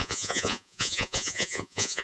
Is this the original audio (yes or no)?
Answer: no